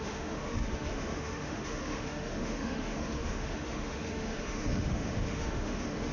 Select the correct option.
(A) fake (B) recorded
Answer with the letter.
A